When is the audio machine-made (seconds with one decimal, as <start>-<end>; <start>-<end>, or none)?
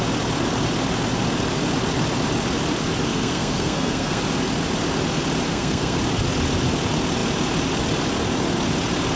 3.1-4.2; 5.5-6.0